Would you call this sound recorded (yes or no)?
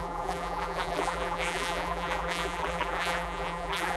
no